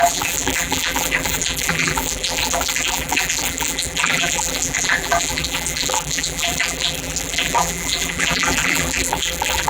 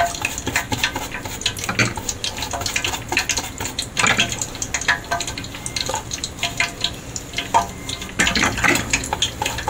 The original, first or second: second